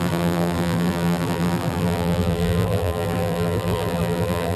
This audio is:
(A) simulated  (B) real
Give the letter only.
A